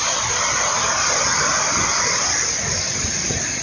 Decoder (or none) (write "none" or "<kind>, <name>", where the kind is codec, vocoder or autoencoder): none